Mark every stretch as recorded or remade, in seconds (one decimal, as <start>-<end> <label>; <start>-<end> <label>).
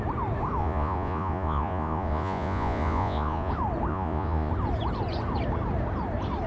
0.0-0.6 recorded; 0.6-3.5 remade; 3.5-3.9 recorded; 3.9-4.5 remade; 4.5-6.5 recorded